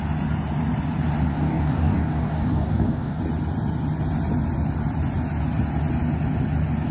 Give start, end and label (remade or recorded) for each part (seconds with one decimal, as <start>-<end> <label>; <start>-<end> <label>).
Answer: 0.0-1.3 recorded; 1.3-3.2 remade; 3.2-6.9 recorded